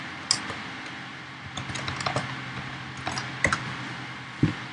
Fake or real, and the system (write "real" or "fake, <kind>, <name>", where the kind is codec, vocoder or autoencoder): real